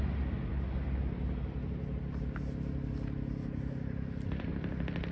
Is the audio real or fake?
real